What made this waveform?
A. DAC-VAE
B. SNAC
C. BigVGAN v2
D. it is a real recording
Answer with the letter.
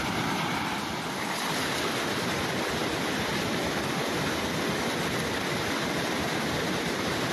D